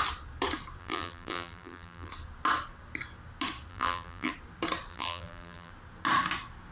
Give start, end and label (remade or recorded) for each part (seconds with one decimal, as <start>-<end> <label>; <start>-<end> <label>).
0.0-0.8 recorded; 0.8-2.1 remade; 2.1-3.7 recorded; 3.7-4.3 remade; 4.3-4.9 recorded; 4.9-5.7 remade; 5.7-6.7 recorded